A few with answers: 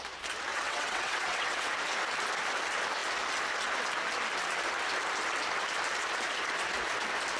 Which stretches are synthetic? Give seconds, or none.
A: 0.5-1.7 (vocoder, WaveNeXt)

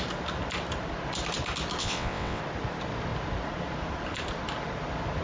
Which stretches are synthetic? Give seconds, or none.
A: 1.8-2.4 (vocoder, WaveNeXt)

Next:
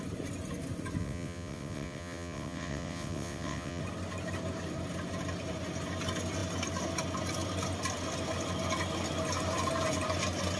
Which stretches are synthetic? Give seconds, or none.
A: 1.0-3.8 (vocoder, WaveNeXt)

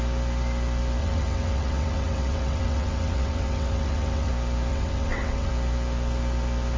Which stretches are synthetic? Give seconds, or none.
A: 1.0-4.3 (vocoder, WaveNeXt); 4.7-5.5

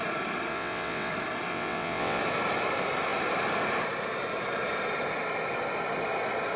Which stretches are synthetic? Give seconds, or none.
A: 0.5-1.1 (vocoder, WaveNeXt); 1.5-2.2